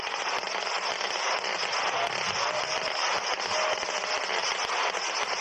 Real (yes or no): yes